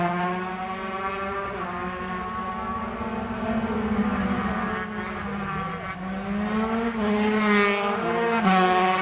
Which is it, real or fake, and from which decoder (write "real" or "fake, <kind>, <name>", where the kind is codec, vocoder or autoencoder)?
real